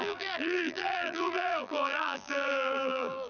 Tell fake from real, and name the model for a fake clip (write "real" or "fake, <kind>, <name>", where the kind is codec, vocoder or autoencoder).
fake, vocoder, BigVGAN v2